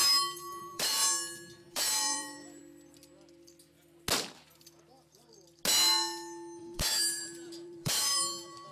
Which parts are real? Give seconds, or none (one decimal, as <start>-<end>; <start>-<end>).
0.0-0.6; 1.0-1.7; 2.6-6.6